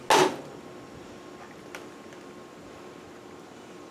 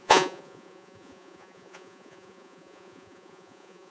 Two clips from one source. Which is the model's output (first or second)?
second